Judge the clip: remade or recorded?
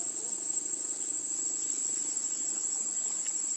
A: recorded